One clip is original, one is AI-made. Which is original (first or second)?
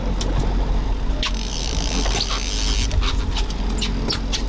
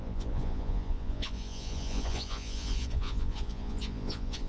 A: first